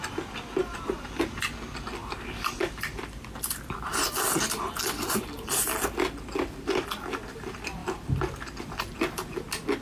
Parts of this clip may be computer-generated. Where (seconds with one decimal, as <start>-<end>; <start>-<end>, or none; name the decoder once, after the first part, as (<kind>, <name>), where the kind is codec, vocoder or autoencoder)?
0.6-1.4 (vocoder, BigVGAN v2); 2.0-5.3